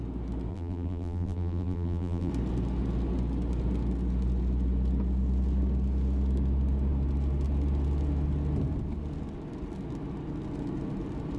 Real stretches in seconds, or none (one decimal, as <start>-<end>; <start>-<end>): 0.0-0.5; 2.3-11.4